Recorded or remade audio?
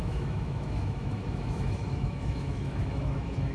remade